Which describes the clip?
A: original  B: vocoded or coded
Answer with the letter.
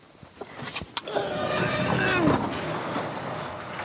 A